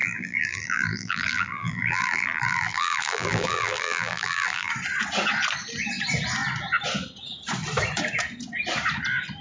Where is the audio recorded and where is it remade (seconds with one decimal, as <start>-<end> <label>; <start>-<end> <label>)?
0.0-4.7 remade; 4.7-9.4 recorded